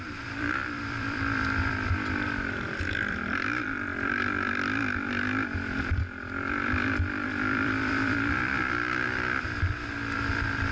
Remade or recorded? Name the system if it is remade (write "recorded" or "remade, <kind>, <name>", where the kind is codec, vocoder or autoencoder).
remade, vocoder, BigVGAN v2